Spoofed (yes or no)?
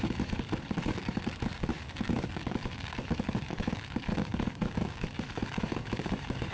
yes